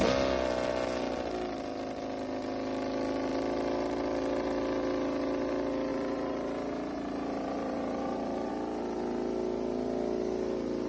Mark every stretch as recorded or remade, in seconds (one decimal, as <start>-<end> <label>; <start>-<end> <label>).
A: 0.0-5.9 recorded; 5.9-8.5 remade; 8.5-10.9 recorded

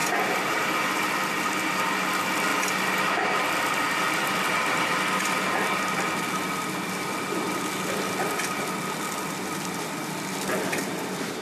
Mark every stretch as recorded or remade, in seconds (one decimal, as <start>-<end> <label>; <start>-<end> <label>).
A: 0.0-0.6 remade; 0.6-11.4 recorded

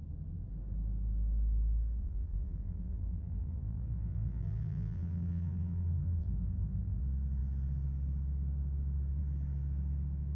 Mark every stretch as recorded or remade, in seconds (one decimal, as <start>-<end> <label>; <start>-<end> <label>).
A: 0.0-2.0 recorded; 2.0-7.0 remade; 7.0-10.3 recorded

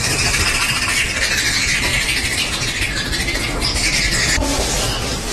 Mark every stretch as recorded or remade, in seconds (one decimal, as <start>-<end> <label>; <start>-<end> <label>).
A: 0.0-5.3 recorded

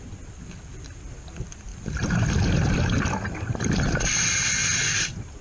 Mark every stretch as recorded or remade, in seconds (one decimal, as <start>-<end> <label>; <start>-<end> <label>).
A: 0.0-1.7 recorded; 1.7-4.0 remade; 4.0-5.4 recorded